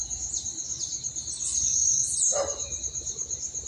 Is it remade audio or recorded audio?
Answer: recorded